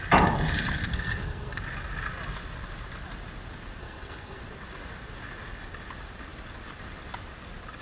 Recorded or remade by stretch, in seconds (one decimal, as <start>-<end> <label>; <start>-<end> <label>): 0.0-0.9 recorded; 0.9-1.6 remade; 1.6-3.8 recorded; 3.8-4.4 remade; 4.4-7.8 recorded